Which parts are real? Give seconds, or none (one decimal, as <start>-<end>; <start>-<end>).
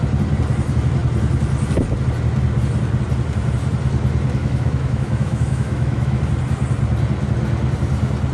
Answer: 0.0-4.4; 6.2-8.3